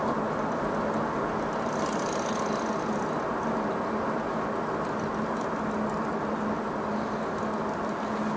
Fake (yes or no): no